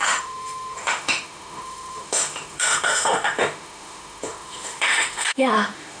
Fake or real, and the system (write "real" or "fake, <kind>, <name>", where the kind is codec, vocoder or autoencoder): fake, autoencoder, DAC-VAE